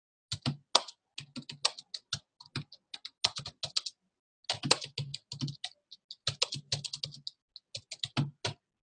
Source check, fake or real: real